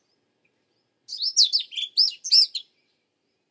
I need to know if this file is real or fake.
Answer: real